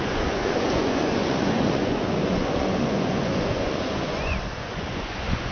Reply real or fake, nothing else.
fake